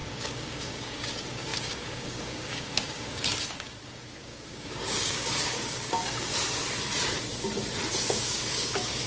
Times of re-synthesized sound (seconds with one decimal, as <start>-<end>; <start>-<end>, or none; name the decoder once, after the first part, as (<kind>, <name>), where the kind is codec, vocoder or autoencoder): 0.0-6.3 (codec, DAC); 8.1-9.1